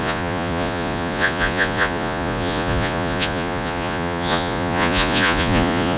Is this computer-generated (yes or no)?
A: yes